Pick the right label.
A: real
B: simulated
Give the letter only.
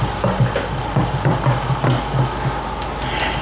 A